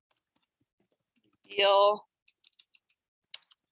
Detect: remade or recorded recorded